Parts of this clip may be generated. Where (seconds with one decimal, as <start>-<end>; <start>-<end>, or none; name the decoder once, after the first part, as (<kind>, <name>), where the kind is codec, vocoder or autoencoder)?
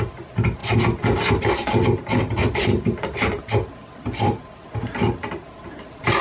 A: none